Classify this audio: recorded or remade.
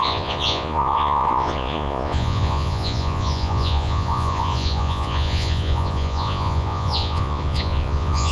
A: remade